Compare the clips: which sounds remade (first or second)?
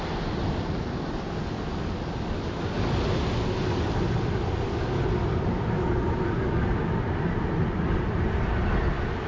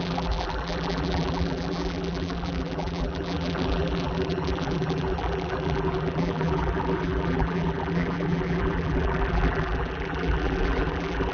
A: second